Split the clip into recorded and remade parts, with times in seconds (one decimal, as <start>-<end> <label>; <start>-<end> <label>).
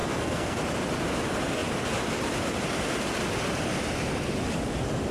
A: 0.0-0.6 remade; 0.6-5.1 recorded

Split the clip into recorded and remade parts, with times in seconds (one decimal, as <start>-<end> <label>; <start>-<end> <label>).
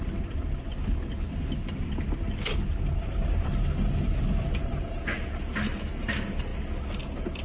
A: 0.0-0.4 recorded; 0.4-2.0 remade; 2.0-7.4 recorded